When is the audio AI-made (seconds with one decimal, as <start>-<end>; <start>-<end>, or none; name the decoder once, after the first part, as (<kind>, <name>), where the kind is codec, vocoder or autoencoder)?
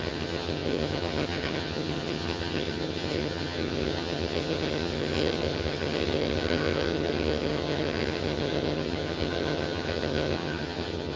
0.0-11.2 (vocoder, HiFi-GAN)